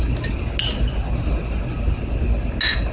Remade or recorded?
recorded